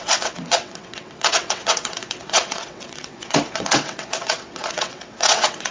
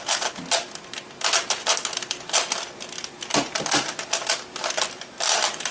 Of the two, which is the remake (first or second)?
first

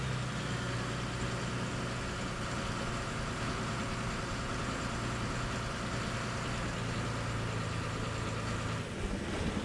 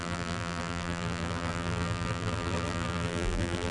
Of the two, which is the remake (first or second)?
second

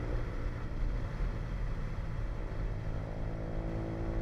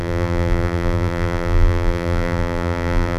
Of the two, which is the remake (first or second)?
second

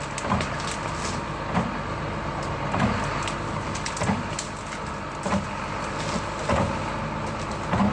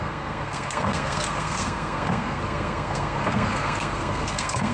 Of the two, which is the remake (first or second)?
second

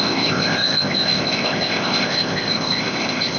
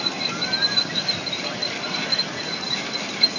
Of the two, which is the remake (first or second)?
first